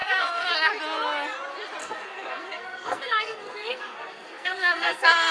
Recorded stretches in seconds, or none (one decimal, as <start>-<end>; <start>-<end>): 0.7-1.8